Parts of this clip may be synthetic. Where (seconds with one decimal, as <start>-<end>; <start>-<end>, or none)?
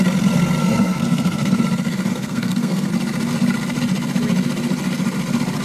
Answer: 0.6-1.6; 2.1-2.9